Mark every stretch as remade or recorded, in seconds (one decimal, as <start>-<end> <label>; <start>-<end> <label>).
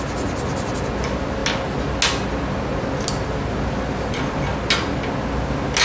0.0-5.8 recorded